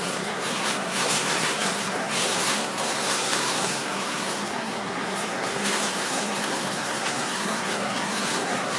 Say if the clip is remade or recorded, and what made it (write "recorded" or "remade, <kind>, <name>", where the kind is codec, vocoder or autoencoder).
remade, codec, SNAC